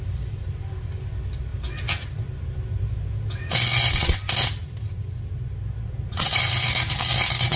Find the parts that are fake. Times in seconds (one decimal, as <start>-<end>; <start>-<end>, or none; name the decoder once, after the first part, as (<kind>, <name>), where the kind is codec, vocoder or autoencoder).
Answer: none